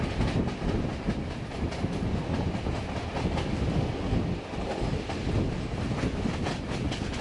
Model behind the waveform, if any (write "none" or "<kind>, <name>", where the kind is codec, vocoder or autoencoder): none